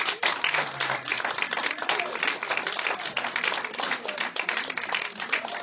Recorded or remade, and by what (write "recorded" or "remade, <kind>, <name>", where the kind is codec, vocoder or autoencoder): recorded